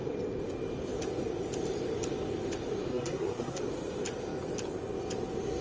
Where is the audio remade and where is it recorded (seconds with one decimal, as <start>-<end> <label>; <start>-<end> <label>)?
0.0-2.9 recorded; 2.9-3.6 remade; 3.6-5.6 recorded